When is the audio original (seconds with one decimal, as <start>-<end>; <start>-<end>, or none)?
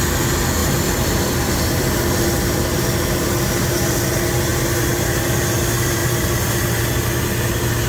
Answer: 0.0-0.6; 2.3-6.0; 6.5-7.9